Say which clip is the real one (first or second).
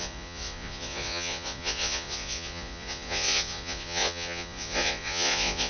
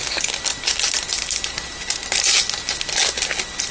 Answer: second